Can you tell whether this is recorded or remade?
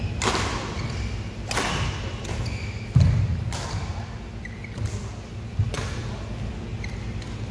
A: recorded